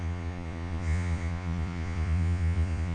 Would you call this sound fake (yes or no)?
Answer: yes